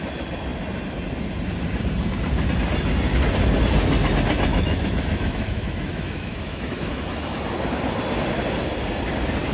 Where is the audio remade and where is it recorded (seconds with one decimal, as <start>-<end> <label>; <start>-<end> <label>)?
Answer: 0.0-4.5 recorded; 4.5-7.4 remade; 7.4-9.5 recorded